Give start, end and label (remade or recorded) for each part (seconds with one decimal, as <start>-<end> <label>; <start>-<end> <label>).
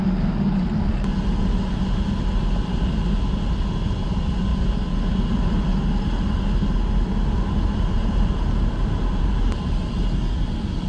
0.0-8.0 recorded; 8.0-9.4 remade; 9.4-10.9 recorded